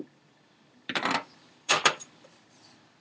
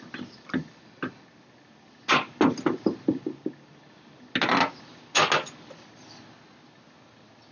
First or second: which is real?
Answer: second